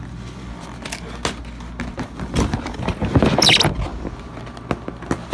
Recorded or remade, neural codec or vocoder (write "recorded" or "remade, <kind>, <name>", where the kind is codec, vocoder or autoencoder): recorded